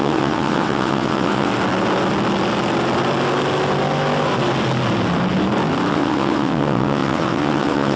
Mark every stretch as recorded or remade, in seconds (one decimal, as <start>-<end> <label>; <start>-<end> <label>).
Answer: 0.0-1.5 remade; 1.5-5.9 recorded; 5.9-8.0 remade